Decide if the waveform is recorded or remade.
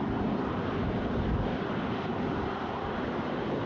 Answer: recorded